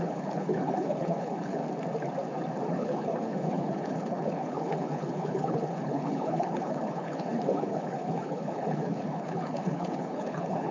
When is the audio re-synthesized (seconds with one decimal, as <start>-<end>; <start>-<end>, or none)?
0.0-1.6; 2.7-10.7